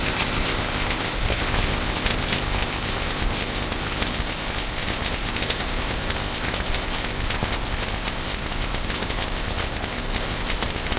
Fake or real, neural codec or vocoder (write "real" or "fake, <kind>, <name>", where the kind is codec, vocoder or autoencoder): fake, codec, ZipCodec